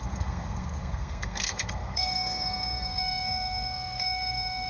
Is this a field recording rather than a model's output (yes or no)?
no